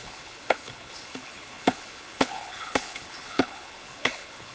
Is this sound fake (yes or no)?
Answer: yes